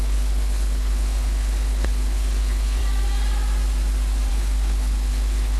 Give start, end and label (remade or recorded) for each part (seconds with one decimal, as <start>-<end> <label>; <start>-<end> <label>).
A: 0.0-2.8 remade; 2.8-4.3 recorded; 4.3-5.6 remade